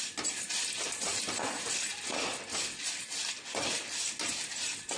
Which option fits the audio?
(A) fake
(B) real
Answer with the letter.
B